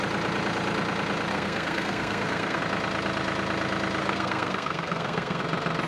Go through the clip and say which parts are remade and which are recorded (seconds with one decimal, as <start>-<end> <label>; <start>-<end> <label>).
0.0-1.3 recorded; 1.3-2.6 remade; 2.6-4.0 recorded; 4.0-5.4 remade; 5.4-5.9 recorded